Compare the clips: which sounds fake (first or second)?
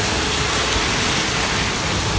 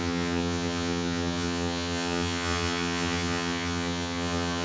second